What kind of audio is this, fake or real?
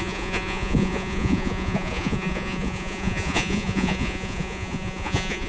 fake